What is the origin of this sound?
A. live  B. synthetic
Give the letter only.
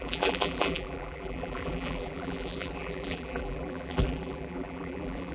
B